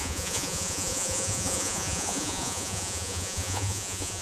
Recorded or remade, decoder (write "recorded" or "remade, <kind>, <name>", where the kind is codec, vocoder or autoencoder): remade, vocoder, Vocos